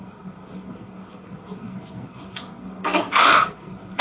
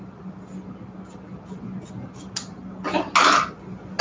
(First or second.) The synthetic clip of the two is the first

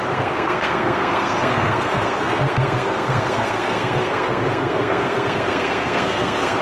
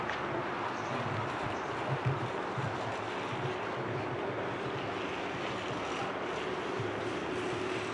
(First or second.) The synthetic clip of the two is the first